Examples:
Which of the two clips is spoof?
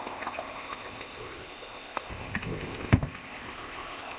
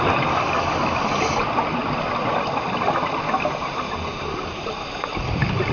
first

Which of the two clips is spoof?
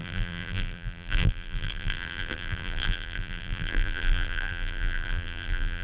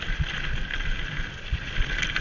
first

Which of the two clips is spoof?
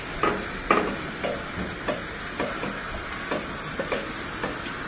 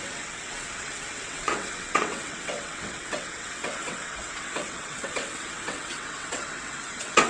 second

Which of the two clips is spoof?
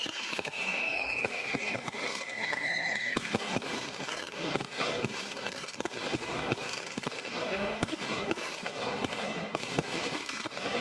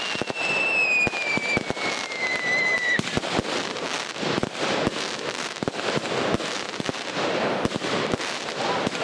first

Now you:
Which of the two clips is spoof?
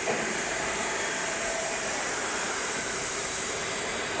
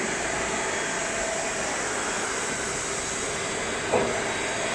first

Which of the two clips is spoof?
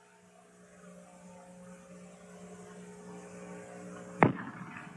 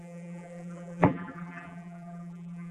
second